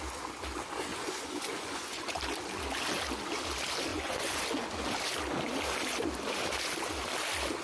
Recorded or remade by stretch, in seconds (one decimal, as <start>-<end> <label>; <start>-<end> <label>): 0.0-0.9 recorded; 0.9-2.2 remade; 2.2-3.9 recorded; 3.9-4.4 remade; 4.4-7.6 recorded